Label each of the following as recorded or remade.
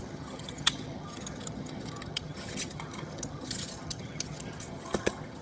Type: remade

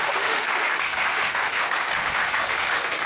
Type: remade